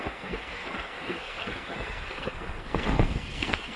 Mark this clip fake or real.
fake